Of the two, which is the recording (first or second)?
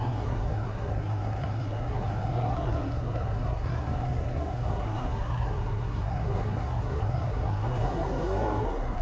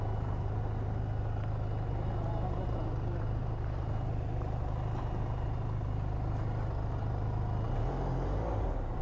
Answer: second